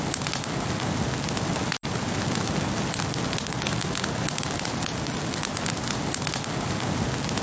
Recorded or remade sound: recorded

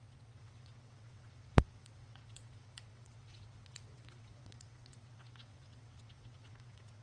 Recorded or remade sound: remade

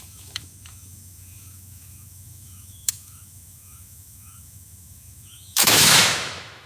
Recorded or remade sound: remade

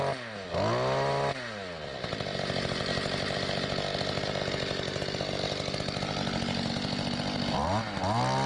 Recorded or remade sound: recorded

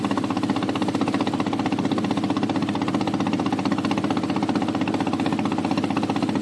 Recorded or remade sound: recorded